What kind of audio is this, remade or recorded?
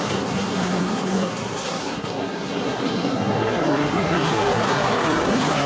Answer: remade